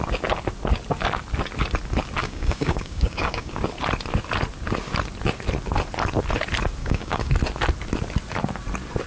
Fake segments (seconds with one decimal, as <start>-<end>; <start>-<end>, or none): 2.2-3.6; 6.8-7.3